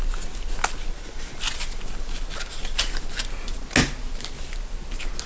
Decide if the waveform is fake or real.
real